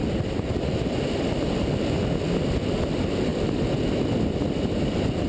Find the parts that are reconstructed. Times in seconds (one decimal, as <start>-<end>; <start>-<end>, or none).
none